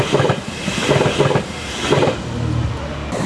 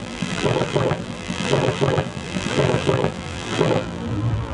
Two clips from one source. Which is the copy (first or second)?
second